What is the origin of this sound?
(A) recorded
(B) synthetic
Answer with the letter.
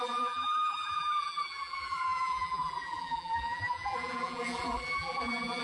B